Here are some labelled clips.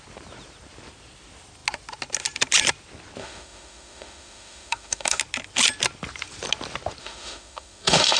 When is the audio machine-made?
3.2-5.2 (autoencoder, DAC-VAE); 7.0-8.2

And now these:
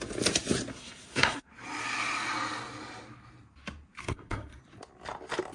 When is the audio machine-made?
0.7-1.5 (codec, SNAC); 4.0-4.6

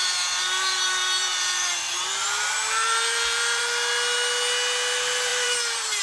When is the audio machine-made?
0.0-3.6 (vocoder, BigVGAN v2); 5.3-6.0

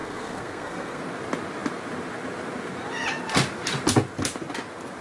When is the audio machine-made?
0.0-1.0 (codec, SNAC)

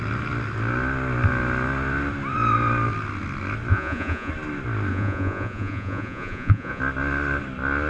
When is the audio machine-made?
3.7-4.3 (vocoder, Vocos); 4.9-6.8

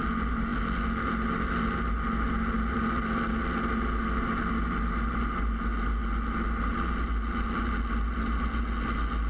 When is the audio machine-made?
none